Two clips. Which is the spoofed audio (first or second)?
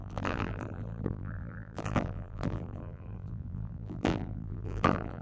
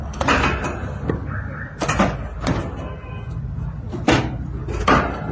first